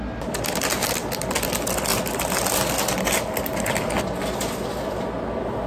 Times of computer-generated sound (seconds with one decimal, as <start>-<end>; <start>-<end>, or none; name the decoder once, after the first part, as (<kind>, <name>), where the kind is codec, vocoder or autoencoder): none